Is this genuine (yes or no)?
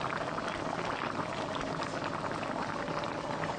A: yes